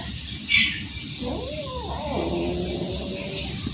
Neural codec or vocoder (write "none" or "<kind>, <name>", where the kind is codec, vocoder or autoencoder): none